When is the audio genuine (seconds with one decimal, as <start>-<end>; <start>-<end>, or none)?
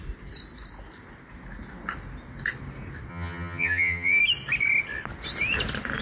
0.0-3.1; 4.2-6.0